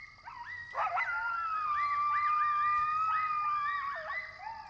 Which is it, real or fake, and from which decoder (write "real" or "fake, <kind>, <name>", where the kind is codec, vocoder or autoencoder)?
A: real